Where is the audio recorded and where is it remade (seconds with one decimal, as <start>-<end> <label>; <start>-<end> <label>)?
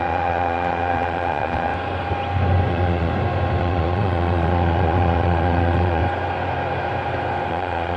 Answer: 0.0-1.7 remade; 1.7-2.7 recorded; 2.7-3.1 remade; 3.1-3.6 recorded; 3.6-6.0 remade; 6.0-7.5 recorded; 7.5-8.0 remade